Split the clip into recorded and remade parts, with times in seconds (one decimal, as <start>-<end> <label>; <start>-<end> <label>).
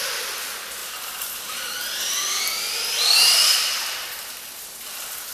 0.0-5.3 recorded